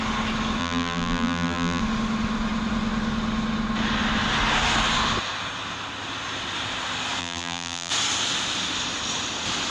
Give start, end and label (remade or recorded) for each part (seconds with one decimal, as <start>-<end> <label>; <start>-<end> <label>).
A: 0.0-0.6 recorded; 0.6-1.8 remade; 1.8-7.2 recorded; 7.2-7.9 remade; 7.9-9.7 recorded